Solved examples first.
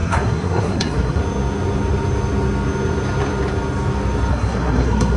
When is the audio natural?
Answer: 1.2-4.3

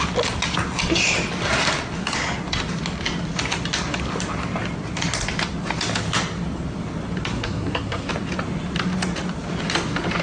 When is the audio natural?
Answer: 0.0-7.3; 8.1-10.2

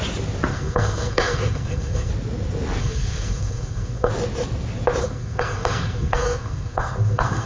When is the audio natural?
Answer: 0.0-0.5; 2.1-2.8; 4.1-5.0

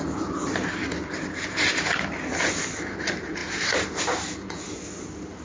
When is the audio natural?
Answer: 0.0-5.4

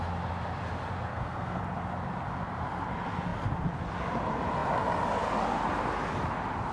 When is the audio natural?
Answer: 0.0-1.1; 1.6-6.7

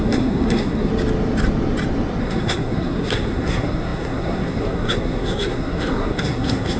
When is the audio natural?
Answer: 0.9-2.2

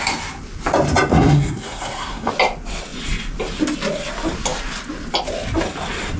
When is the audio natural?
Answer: 0.0-1.1; 2.3-6.2

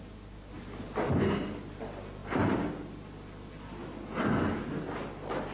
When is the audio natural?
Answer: 0.0-5.5